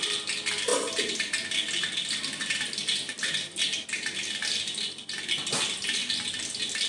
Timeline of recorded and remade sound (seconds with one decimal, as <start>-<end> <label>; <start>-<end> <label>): 0.0-6.9 recorded